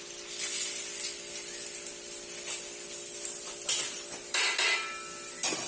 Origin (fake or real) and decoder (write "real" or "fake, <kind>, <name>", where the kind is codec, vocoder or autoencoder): real